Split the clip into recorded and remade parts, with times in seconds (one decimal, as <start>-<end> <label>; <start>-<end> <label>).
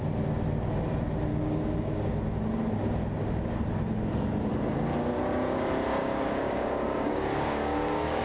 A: 0.0-1.3 recorded; 1.3-2.1 remade; 2.1-6.0 recorded; 6.0-8.2 remade